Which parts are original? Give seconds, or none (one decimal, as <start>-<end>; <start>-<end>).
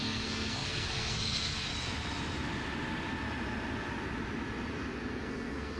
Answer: 1.7-5.1